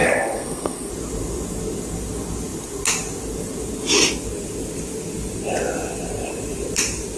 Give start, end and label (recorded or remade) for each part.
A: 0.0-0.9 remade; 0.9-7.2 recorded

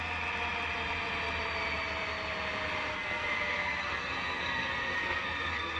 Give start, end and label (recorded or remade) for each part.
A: 0.0-2.9 recorded; 2.9-5.8 remade

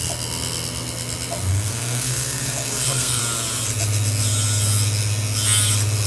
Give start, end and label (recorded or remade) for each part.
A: 0.0-1.5 recorded; 1.5-3.2 remade; 3.2-6.1 recorded

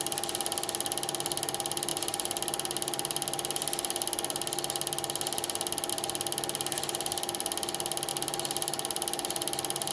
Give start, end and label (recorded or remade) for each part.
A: 0.0-9.9 recorded